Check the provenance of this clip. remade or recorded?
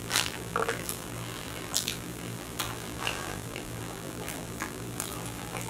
remade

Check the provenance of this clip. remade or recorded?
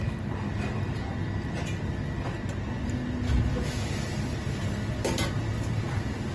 recorded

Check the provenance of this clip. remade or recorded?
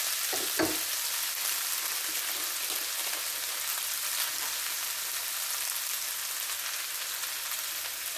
recorded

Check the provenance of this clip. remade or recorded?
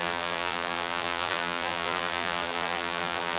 remade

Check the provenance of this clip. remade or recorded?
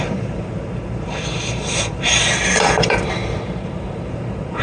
remade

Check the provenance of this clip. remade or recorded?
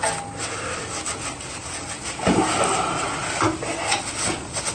recorded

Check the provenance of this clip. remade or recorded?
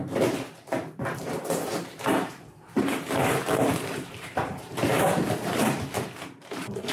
remade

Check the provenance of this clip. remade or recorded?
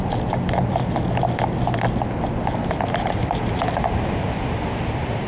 recorded